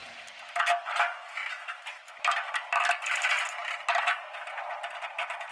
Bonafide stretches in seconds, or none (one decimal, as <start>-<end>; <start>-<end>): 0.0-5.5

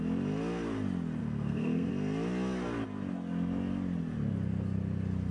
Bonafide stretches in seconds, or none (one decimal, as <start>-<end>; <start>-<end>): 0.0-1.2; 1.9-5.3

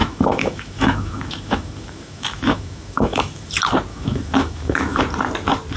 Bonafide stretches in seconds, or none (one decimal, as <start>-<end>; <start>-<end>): 3.5-3.9; 5.0-5.8